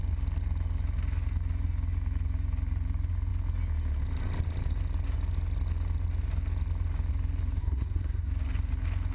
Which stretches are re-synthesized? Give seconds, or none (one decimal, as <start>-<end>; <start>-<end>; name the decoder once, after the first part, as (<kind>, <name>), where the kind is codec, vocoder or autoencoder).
7.6-8.3 (codec, SNAC)